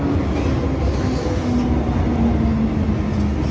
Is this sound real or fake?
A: real